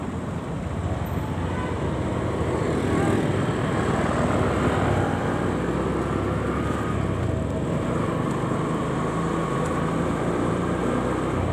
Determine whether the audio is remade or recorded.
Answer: recorded